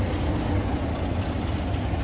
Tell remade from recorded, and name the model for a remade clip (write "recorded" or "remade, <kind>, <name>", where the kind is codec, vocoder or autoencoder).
recorded